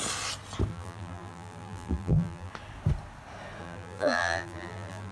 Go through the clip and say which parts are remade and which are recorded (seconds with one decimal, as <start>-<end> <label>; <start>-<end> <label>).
0.0-0.7 recorded; 0.7-2.5 remade; 2.5-3.6 recorded; 3.6-5.1 remade